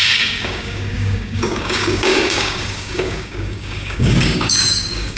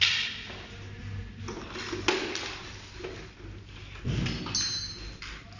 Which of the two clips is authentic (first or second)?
second